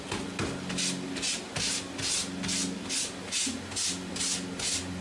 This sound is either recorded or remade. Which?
recorded